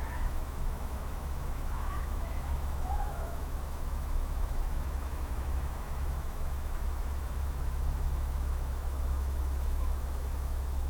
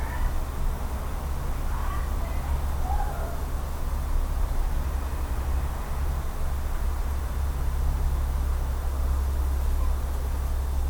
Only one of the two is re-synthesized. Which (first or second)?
first